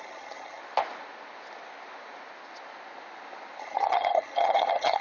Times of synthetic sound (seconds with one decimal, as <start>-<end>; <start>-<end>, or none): 0.0-0.6; 3.6-5.0